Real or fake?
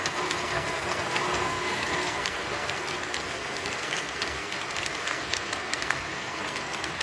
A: fake